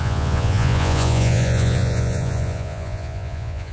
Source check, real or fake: fake